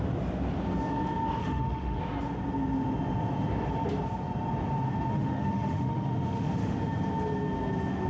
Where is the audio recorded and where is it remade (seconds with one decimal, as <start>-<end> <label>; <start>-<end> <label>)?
0.0-1.4 recorded; 1.4-2.0 remade; 2.0-5.1 recorded; 5.1-6.8 remade; 6.8-8.1 recorded